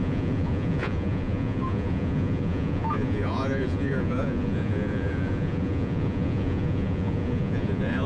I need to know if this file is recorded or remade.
remade